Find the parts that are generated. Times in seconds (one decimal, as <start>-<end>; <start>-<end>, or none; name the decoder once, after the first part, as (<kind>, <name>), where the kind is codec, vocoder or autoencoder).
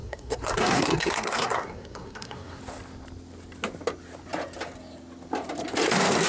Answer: 0.0-2.6 (codec, SNAC)